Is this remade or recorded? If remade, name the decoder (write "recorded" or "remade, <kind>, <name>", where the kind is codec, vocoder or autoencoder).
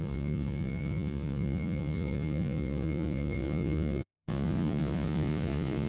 remade, vocoder, Vocos